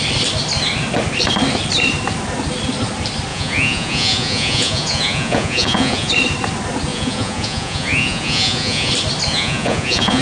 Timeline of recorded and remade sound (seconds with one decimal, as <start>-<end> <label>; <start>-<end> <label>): 0.0-3.3 recorded; 3.3-6.1 remade; 6.1-6.9 recorded; 6.9-8.9 remade; 8.9-9.3 recorded; 9.3-10.2 remade